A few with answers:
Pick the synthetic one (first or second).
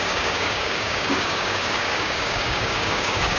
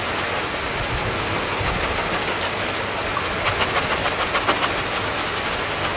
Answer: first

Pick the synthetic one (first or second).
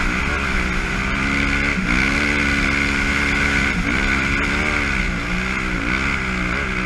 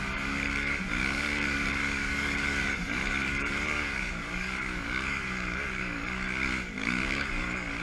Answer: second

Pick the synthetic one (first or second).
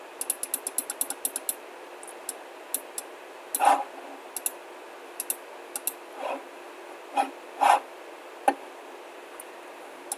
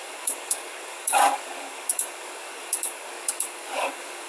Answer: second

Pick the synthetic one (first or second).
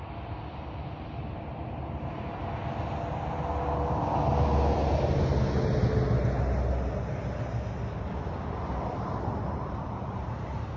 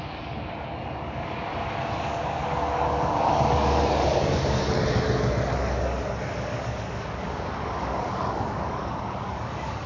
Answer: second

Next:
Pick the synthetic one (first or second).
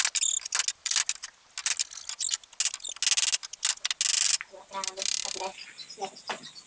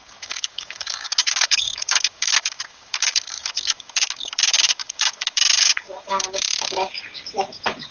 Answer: second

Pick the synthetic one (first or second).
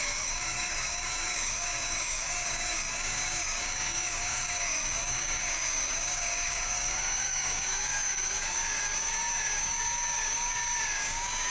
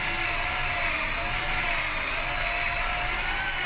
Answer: first